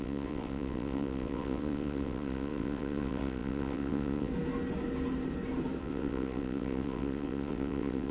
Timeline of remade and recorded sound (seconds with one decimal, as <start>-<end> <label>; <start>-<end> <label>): 0.0-4.3 remade; 4.3-5.8 recorded; 5.8-8.1 remade